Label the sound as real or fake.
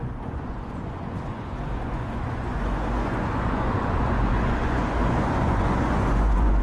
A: fake